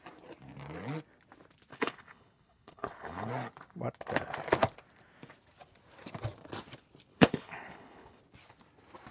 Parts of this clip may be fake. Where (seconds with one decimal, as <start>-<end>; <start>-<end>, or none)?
1.7-3.3; 7.1-8.2